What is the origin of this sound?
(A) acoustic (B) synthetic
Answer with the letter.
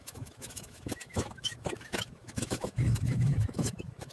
B